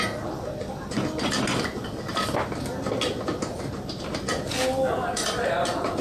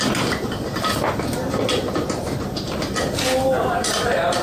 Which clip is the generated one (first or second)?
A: second